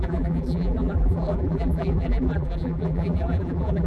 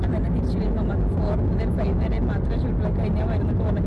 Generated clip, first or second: first